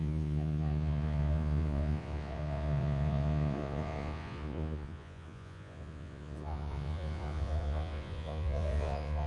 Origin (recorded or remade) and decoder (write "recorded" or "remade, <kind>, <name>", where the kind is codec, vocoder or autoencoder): remade, vocoder, Vocos